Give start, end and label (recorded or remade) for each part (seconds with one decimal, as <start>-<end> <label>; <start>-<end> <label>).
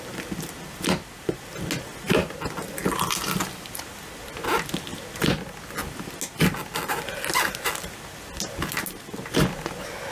0.0-10.1 recorded